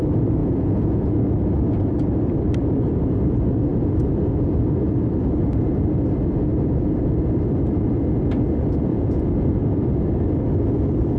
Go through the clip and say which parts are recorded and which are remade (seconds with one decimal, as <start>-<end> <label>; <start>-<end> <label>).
0.0-0.4 recorded; 0.4-1.2 remade; 1.2-8.9 recorded; 8.9-9.6 remade; 9.6-11.2 recorded